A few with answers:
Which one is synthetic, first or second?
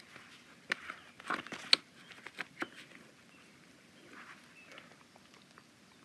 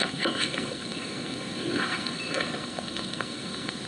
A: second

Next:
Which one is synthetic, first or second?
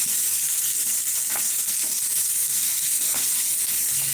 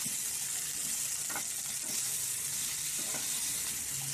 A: first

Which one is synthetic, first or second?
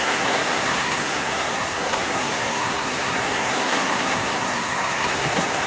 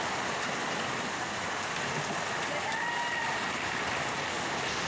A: first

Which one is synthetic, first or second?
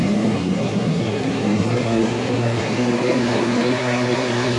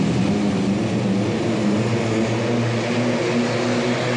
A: first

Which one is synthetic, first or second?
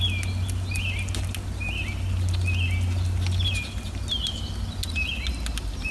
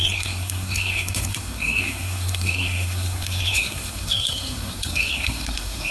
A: second